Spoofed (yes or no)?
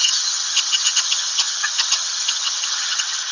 yes